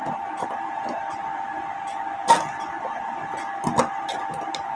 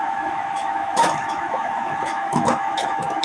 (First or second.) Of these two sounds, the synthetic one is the second